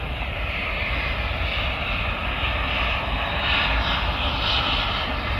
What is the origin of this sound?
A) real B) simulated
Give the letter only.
A